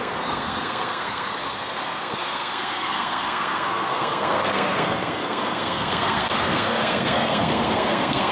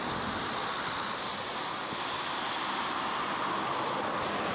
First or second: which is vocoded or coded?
first